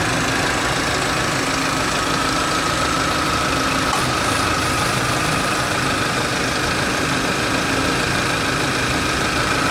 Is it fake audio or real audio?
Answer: real